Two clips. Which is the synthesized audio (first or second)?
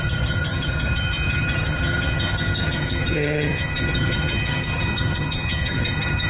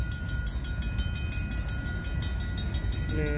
first